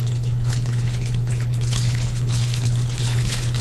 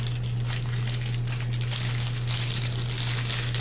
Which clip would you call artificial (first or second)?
first